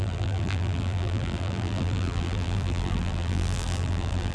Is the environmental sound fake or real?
fake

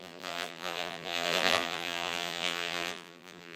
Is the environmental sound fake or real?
fake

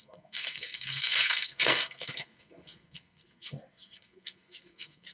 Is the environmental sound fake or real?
fake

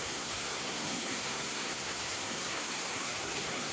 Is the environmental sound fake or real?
fake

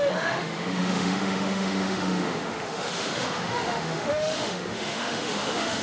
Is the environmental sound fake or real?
fake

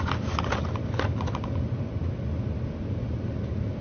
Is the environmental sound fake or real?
real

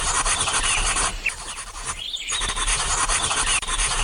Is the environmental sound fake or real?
fake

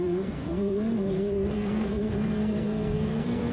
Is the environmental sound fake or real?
fake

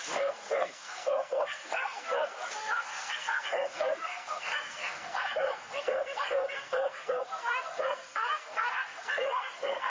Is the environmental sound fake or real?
fake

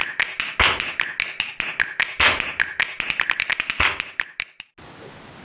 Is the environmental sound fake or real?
real